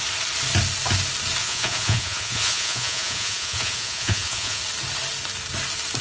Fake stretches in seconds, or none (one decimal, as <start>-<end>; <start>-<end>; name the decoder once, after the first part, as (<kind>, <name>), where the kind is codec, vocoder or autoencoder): 1.4-4.6 (vocoder, Vocos)